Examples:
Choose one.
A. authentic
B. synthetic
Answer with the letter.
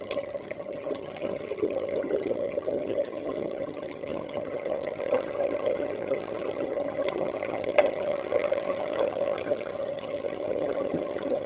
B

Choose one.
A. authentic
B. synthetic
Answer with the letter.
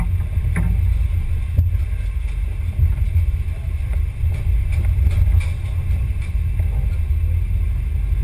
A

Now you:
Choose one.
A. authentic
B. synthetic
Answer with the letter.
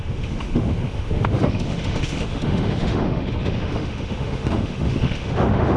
B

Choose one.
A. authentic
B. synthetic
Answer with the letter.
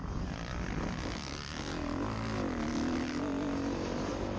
A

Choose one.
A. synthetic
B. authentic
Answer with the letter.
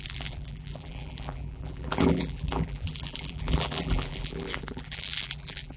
A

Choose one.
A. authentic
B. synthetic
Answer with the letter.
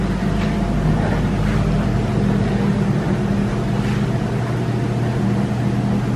A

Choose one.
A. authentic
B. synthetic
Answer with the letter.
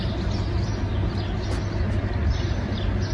A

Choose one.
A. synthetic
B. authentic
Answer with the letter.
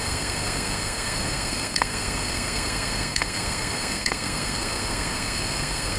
A